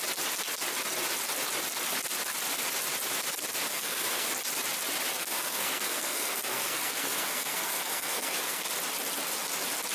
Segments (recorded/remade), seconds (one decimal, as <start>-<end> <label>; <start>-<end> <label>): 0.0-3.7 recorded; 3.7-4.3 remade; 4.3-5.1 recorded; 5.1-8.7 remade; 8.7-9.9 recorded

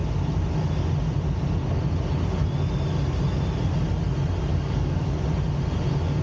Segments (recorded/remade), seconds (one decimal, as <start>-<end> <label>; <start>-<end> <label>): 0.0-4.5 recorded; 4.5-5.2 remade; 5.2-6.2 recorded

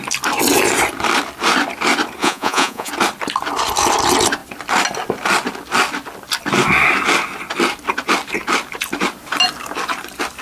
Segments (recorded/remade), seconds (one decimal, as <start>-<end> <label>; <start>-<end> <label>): 0.0-2.2 recorded; 2.2-2.9 remade; 2.9-10.4 recorded

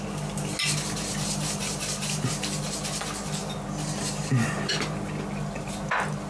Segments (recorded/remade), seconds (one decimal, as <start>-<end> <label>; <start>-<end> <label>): 0.0-6.3 recorded

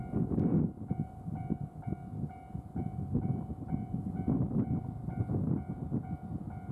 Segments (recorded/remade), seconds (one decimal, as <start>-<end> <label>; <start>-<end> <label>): 0.0-6.7 recorded

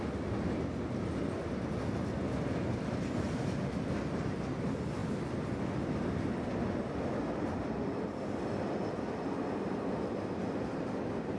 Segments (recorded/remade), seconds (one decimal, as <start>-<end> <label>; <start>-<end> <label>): 0.0-11.4 recorded